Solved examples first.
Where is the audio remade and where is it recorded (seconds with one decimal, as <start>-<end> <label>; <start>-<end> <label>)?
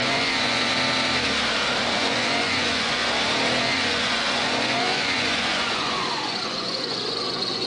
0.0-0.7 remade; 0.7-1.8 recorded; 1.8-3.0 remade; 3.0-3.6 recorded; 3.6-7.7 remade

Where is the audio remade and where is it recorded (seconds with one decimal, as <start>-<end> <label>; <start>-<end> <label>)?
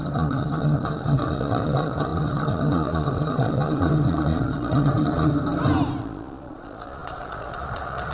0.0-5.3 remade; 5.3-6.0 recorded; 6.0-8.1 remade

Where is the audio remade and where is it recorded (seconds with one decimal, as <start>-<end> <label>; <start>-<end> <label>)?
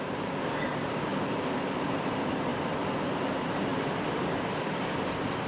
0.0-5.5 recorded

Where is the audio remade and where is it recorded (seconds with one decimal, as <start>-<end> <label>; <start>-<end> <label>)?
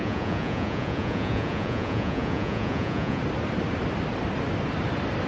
0.0-3.2 remade; 3.2-5.3 recorded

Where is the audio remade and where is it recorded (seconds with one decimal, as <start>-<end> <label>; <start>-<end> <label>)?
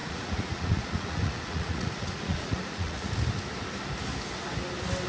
0.0-3.1 remade; 3.1-5.1 recorded